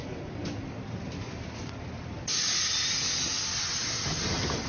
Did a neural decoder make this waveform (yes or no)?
no